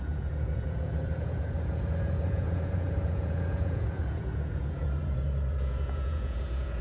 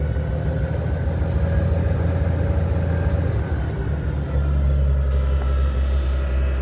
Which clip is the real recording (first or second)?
second